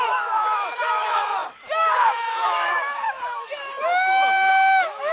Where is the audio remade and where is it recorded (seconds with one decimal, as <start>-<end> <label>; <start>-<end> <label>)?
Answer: 0.0-5.1 remade